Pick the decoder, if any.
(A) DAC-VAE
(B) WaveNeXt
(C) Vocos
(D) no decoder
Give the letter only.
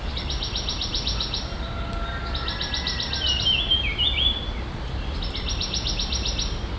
D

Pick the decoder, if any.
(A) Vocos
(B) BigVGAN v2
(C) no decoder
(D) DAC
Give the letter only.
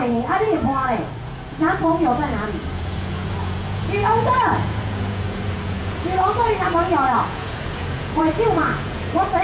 A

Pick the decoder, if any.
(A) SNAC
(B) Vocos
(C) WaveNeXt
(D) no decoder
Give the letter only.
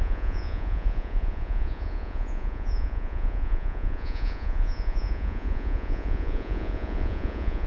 B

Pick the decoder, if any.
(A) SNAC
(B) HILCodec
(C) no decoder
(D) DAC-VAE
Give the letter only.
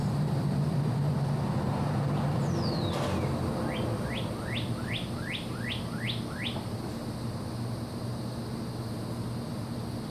C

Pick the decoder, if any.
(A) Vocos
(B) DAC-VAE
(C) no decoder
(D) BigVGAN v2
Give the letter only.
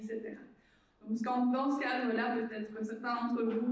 C